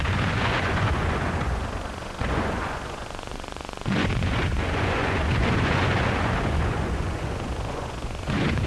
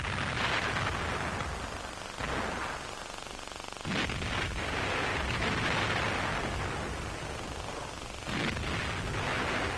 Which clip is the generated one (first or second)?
first